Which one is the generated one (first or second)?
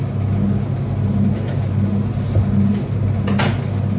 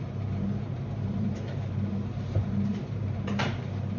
second